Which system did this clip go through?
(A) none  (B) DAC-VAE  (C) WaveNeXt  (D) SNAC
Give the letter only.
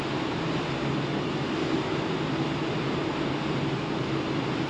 A